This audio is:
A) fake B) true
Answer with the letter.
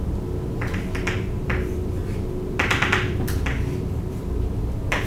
A